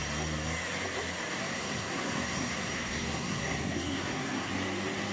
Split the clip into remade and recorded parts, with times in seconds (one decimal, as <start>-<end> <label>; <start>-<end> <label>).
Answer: 0.0-1.4 recorded; 1.4-4.5 remade; 4.5-5.1 recorded